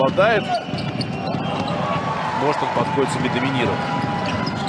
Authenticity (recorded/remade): recorded